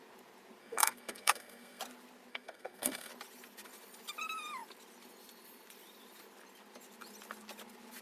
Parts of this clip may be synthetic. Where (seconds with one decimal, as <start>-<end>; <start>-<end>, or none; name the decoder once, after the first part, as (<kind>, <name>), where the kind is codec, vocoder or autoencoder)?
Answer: 0.6-1.8 (codec, SNAC); 2.3-3.1